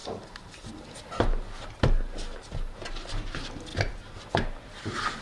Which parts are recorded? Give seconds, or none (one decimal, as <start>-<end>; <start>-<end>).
0.0-3.7; 4.3-5.2